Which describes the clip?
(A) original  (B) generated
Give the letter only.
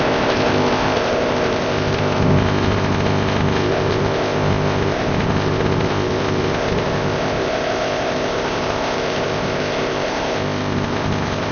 B